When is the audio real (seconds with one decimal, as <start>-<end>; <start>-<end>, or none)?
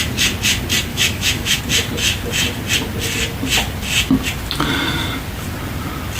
0.0-0.9; 1.6-6.2